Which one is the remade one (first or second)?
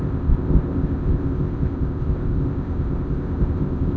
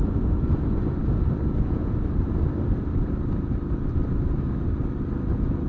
first